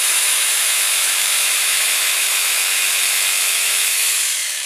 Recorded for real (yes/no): no